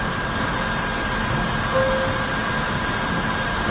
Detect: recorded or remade recorded